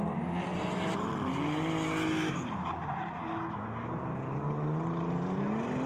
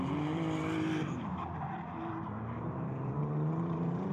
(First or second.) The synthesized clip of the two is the second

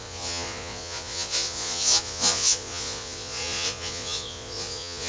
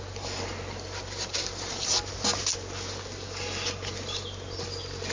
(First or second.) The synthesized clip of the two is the first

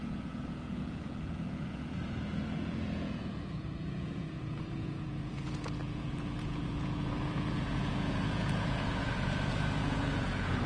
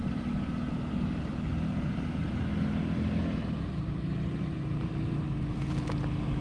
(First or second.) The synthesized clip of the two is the first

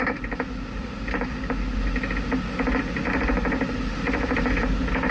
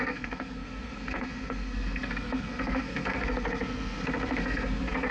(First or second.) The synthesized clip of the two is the second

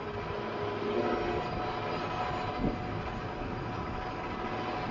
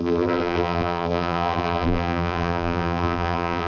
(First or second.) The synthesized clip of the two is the second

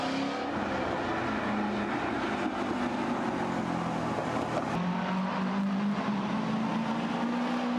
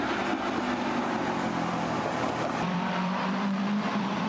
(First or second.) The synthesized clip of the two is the second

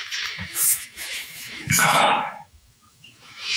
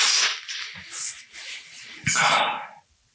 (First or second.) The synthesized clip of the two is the first